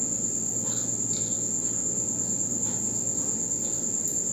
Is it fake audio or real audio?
real